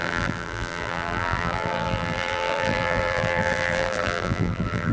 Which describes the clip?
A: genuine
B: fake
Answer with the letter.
B